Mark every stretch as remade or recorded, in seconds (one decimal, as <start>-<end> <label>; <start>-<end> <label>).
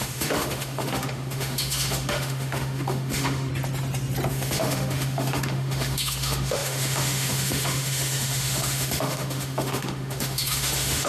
0.0-3.5 remade; 3.5-4.3 recorded; 4.3-11.1 remade